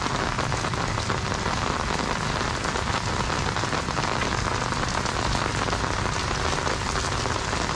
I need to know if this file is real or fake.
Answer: real